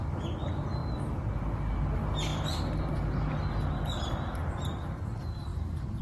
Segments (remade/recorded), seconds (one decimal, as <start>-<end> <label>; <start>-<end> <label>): 0.0-6.0 recorded